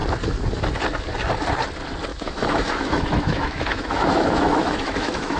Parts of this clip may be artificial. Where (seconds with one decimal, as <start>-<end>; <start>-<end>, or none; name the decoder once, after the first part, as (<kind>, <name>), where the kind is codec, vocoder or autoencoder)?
2.1-5.4 (autoencoder, DAC-VAE)